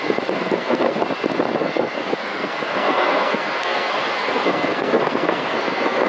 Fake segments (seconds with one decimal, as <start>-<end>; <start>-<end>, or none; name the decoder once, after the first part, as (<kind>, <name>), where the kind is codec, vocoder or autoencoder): 0.0-1.0 (codec, SNAC); 1.6-6.1